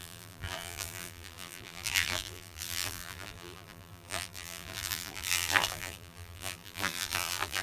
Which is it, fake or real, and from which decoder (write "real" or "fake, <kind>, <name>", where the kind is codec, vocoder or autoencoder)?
fake, vocoder, BigVGAN v2